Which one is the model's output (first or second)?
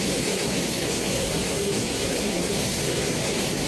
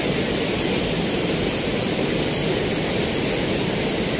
first